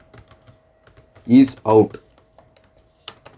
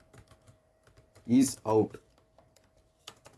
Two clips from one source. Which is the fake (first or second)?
second